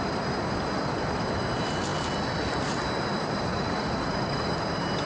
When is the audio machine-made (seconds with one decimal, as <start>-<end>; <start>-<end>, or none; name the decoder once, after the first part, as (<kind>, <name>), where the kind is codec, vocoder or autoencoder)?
3.5-4.5 (vocoder, Vocos)

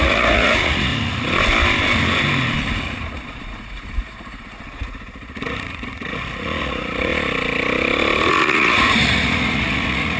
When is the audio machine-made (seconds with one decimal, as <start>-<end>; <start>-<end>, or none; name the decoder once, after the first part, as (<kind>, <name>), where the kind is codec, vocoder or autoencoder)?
0.0-0.9 (vocoder, Vocos); 2.7-7.1; 8.3-10.2

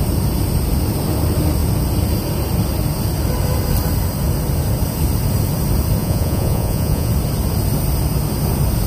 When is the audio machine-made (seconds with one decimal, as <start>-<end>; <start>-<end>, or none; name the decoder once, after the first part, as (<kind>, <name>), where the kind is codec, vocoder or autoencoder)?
6.0-7.1 (vocoder, Vocos)